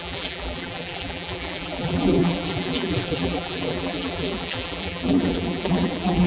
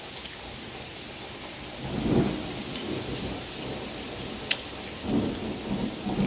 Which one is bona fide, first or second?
second